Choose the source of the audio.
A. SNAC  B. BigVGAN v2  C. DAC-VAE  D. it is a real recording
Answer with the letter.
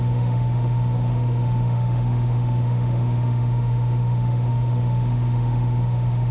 C